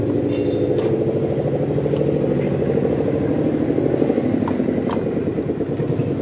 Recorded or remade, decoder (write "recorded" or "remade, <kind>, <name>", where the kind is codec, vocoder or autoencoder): recorded